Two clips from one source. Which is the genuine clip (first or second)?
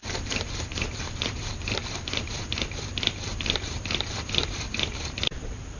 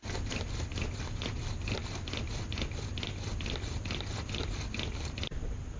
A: second